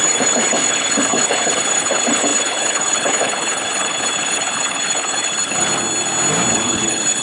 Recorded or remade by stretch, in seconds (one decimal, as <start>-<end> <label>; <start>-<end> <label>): 0.0-5.7 remade; 5.7-6.5 recorded; 6.5-7.2 remade